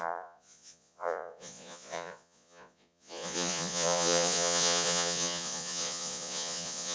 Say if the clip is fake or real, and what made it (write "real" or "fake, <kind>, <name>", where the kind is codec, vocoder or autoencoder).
fake, vocoder, Vocos